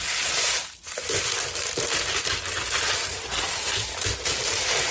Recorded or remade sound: recorded